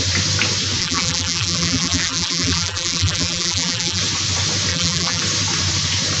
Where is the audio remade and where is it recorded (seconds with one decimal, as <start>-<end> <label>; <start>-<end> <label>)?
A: 0.0-0.8 recorded; 0.8-4.0 remade; 4.0-4.7 recorded; 4.7-5.2 remade; 5.2-6.2 recorded